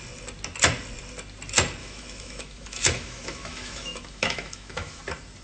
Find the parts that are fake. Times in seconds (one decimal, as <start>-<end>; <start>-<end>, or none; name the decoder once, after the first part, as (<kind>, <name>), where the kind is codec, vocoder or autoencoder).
1.8-5.0 (autoencoder, DAC-VAE)